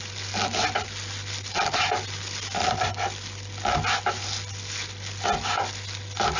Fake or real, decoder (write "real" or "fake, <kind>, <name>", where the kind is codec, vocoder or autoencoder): real